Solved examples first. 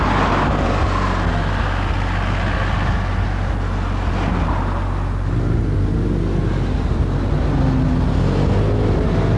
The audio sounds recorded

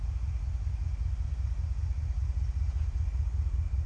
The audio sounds remade